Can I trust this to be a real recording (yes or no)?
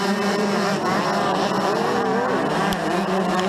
yes